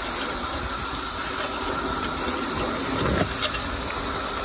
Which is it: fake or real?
real